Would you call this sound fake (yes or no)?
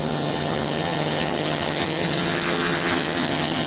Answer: yes